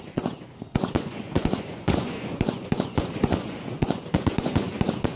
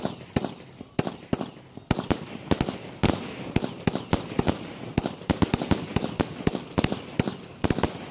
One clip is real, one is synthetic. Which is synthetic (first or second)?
first